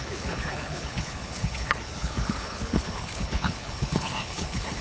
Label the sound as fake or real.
fake